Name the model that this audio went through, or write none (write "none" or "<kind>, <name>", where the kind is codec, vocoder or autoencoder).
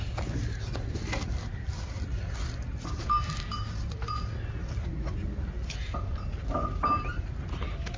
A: none